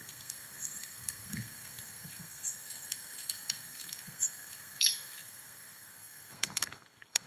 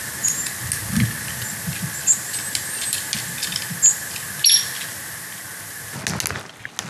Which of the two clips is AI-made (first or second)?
first